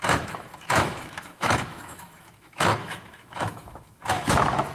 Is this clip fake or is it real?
fake